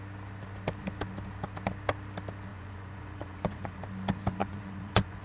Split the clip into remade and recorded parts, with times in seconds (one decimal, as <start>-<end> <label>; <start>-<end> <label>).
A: 0.0-2.5 recorded; 2.5-3.8 remade; 3.8-4.4 recorded; 4.4-5.2 remade